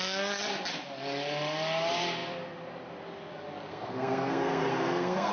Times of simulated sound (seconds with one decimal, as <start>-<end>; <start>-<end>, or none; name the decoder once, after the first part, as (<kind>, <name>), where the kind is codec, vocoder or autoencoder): 3.7-5.3 (codec, SNAC)

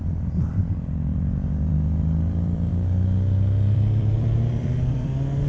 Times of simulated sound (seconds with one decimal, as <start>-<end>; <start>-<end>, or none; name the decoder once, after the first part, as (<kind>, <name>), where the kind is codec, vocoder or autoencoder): 0.0-1.1 (vocoder, BigVGAN v2); 1.7-5.5

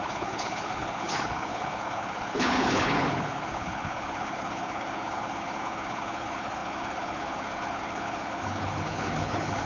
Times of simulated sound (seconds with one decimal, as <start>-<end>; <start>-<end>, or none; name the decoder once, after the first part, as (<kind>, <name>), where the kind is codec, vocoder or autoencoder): 0.0-9.7 (codec, HILCodec)

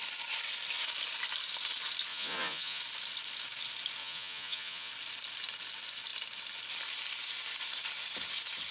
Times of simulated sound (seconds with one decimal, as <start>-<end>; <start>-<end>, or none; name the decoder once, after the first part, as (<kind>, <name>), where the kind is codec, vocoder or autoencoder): 2.1-2.8 (vocoder, Vocos); 4.0-4.9

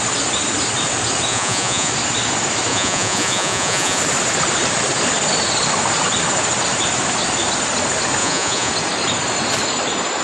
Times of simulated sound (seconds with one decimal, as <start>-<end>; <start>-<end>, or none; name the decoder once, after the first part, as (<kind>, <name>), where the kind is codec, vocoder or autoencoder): 1.3-1.9 (vocoder, Vocos); 2.7-4.0; 8.2-8.7

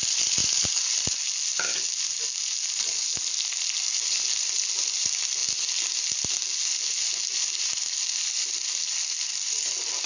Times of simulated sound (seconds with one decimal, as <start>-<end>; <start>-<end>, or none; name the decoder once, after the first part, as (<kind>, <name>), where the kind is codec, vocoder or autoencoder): none

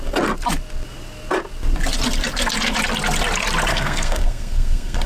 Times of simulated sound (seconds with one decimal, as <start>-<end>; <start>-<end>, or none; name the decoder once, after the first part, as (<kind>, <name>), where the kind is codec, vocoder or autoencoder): 3.7-5.1 (codec, SNAC)

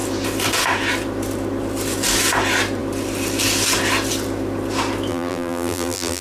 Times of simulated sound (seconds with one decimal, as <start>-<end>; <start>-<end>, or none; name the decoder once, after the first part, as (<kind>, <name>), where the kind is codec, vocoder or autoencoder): 5.1-6.2 (vocoder, BigVGAN v2)